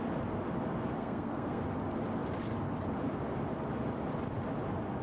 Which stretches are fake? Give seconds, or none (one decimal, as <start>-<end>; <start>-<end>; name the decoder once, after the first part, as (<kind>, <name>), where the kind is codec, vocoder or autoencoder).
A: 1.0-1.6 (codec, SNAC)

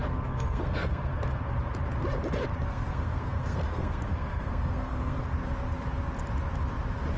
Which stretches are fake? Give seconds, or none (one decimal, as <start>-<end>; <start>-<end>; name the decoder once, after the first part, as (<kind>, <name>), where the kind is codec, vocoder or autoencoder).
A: 0.0-1.4 (codec, SNAC); 2.7-5.2

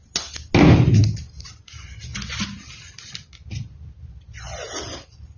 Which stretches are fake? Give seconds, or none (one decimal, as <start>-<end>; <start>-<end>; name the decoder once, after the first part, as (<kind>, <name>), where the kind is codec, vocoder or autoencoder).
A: none

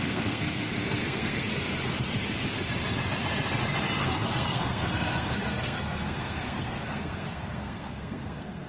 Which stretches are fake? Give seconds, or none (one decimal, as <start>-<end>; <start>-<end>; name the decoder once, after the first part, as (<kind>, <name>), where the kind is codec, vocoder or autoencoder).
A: 0.0-1.5 (codec, SNAC); 4.0-8.7